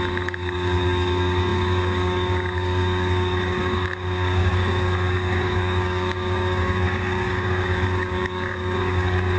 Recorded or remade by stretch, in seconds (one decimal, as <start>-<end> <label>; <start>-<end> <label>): 0.0-9.4 remade

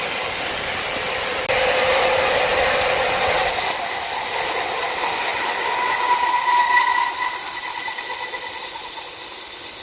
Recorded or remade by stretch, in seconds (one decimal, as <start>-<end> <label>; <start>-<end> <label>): 0.0-9.8 recorded

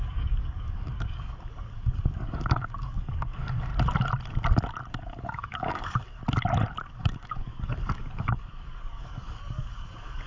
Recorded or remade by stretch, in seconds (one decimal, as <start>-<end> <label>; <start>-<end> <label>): 0.0-3.7 remade; 3.7-4.9 recorded; 4.9-6.2 remade; 6.2-6.9 recorded; 6.9-10.3 remade

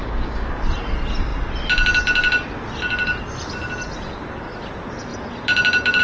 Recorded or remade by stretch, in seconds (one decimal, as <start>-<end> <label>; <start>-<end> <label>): 0.0-0.7 remade; 0.7-6.0 recorded

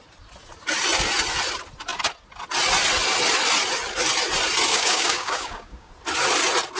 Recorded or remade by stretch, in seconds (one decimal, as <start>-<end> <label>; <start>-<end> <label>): 0.0-4.7 recorded; 4.7-5.9 remade; 5.9-6.8 recorded